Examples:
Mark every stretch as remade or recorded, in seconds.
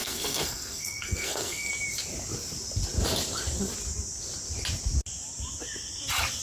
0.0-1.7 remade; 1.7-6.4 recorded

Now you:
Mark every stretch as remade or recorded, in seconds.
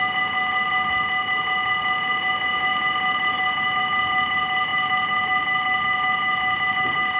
0.0-7.2 recorded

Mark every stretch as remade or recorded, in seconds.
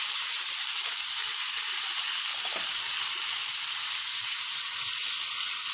0.0-1.2 recorded; 1.2-1.9 remade; 1.9-2.3 recorded; 2.3-4.6 remade; 4.6-5.7 recorded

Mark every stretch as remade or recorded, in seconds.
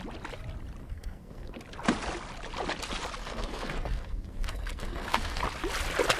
0.0-0.8 recorded; 0.8-1.6 remade; 1.6-3.2 recorded; 3.2-5.4 remade; 5.4-6.2 recorded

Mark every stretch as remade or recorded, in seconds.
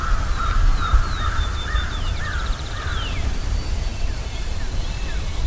0.0-0.7 recorded; 0.7-2.7 remade; 2.7-3.9 recorded; 3.9-4.8 remade; 4.8-5.5 recorded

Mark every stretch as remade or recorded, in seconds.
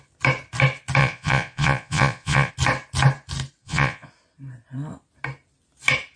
0.0-1.0 recorded; 1.0-2.5 remade; 2.5-3.6 recorded; 3.6-4.1 remade; 4.1-6.2 recorded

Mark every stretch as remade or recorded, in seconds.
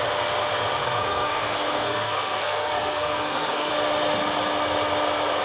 0.0-0.8 recorded; 0.8-3.7 remade; 3.7-5.4 recorded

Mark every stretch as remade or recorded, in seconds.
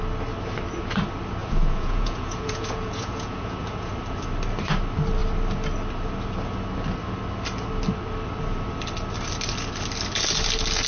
0.0-1.4 recorded; 1.4-3.9 remade; 3.9-10.9 recorded